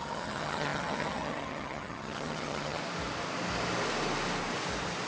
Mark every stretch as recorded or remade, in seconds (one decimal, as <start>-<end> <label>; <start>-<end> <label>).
0.0-2.8 remade; 2.8-5.1 recorded

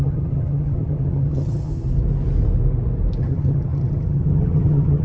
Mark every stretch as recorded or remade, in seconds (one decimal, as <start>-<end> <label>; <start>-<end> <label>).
0.0-1.7 remade; 1.7-3.2 recorded; 3.2-5.0 remade

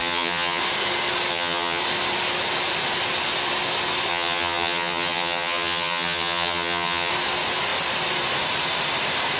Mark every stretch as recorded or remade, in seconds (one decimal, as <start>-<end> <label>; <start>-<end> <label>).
0.0-0.6 remade; 0.6-1.3 recorded; 1.3-1.8 remade; 1.8-4.1 recorded; 4.1-7.1 remade; 7.1-9.4 recorded

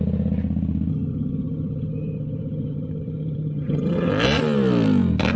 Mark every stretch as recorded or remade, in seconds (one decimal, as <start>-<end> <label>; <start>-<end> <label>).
0.0-0.9 recorded; 0.9-4.1 remade; 4.1-5.4 recorded

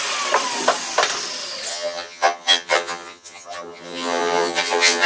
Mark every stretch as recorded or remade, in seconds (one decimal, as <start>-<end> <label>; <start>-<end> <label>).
0.0-1.7 recorded; 1.7-5.1 remade